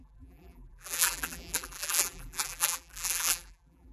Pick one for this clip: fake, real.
fake